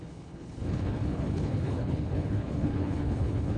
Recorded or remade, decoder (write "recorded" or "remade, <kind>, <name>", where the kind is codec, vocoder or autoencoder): remade, codec, HILCodec